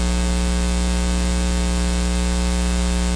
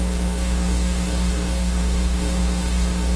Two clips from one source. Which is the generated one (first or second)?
second